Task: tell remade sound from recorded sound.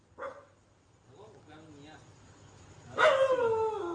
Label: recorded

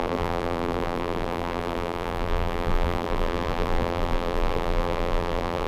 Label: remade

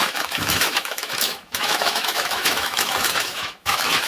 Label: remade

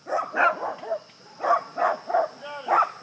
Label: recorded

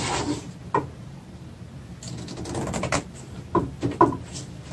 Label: recorded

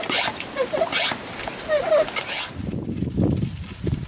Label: recorded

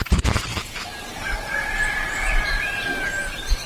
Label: remade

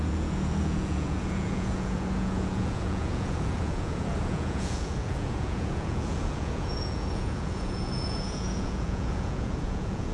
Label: remade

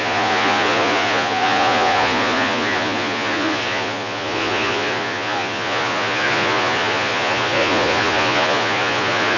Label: remade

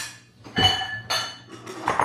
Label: recorded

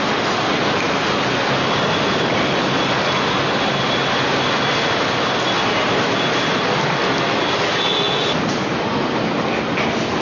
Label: recorded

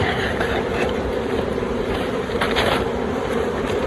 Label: remade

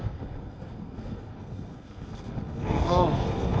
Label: remade